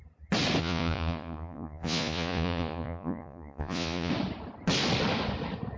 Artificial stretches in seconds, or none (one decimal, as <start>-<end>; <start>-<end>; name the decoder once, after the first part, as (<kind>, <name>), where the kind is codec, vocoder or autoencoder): 0.6-4.1 (vocoder, Vocos)